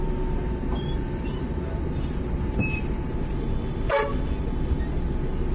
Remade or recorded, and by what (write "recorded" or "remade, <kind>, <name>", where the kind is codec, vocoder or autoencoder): recorded